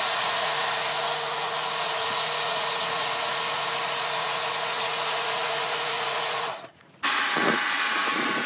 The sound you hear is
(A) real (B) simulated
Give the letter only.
B